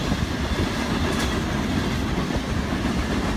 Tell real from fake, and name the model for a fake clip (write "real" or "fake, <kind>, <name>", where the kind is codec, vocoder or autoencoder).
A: real